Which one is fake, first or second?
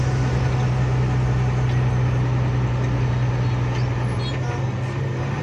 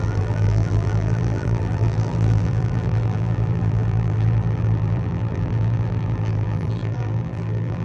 second